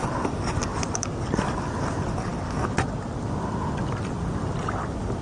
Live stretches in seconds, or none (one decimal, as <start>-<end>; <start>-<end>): 0.0-5.2